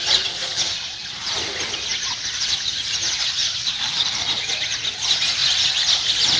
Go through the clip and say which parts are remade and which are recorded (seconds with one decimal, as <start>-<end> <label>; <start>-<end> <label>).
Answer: 0.0-3.4 recorded; 3.4-4.5 remade; 4.5-6.4 recorded